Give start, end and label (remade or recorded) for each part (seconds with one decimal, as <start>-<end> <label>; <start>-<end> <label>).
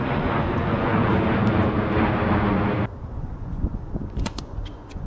0.0-1.1 remade; 1.1-3.2 recorded; 3.2-5.1 remade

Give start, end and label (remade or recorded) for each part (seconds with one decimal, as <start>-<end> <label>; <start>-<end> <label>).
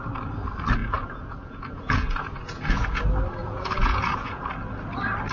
0.0-0.8 recorded; 0.8-3.0 remade; 3.0-3.4 recorded; 3.4-4.4 remade; 4.4-5.3 recorded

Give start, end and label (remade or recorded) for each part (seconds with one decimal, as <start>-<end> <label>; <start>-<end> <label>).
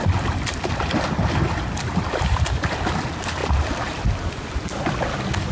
0.0-3.4 recorded; 3.4-4.3 remade; 4.3-5.5 recorded